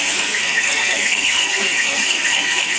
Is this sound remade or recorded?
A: remade